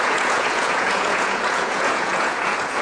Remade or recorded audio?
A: remade